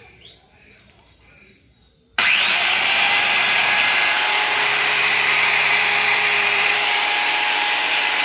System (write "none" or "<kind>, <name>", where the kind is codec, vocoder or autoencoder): vocoder, BigVGAN v2